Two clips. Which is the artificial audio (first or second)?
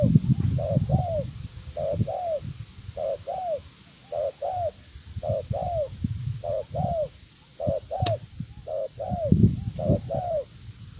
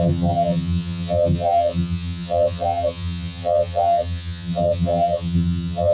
second